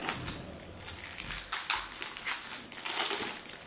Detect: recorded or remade recorded